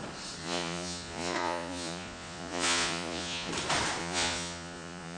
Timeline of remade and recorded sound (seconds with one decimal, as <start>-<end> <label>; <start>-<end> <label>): 0.0-0.4 recorded; 0.4-3.5 remade; 3.5-4.0 recorded; 4.0-5.2 remade